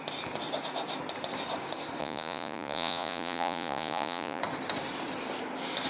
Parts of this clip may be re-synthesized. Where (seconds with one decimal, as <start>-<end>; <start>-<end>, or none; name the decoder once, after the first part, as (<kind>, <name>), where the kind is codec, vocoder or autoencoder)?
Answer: 2.0-4.4 (vocoder, Vocos)